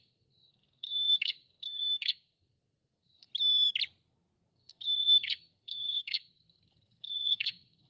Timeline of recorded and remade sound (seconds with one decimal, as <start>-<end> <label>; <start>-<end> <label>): 0.0-3.3 remade; 3.3-4.5 recorded; 4.5-7.9 remade